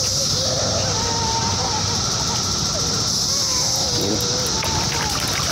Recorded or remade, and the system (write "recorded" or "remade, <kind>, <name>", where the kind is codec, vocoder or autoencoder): recorded